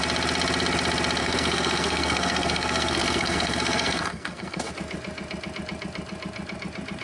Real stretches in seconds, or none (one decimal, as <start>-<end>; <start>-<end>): 0.0-1.2; 4.7-7.0